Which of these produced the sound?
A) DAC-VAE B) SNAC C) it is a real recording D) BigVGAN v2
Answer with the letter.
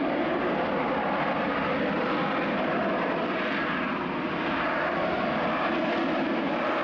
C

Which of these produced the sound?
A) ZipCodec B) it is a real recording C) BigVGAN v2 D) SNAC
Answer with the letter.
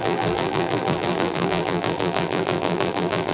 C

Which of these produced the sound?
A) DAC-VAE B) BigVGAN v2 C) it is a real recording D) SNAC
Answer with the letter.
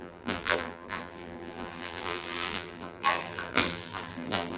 B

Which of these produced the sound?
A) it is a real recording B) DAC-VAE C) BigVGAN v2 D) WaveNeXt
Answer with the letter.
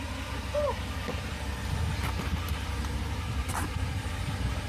C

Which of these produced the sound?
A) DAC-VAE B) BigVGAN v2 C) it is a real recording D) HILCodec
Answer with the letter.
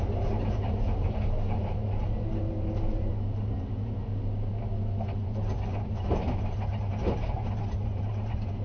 B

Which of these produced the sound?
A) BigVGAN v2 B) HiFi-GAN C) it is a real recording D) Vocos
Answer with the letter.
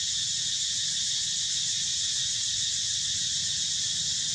C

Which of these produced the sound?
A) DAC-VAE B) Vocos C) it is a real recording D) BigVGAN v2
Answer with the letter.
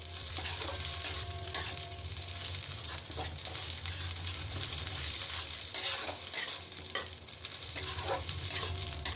D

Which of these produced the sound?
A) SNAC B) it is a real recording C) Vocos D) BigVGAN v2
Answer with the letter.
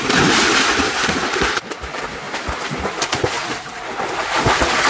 D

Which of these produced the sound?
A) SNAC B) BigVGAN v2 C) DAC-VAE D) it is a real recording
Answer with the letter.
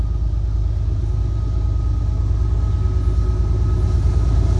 D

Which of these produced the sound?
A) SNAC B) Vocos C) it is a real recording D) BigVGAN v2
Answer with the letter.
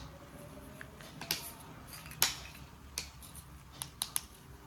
C